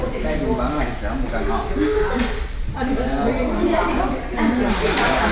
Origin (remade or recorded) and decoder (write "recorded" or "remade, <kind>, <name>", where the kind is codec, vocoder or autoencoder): recorded